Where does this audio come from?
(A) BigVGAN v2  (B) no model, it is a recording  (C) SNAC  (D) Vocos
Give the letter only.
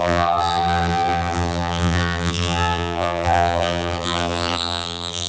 A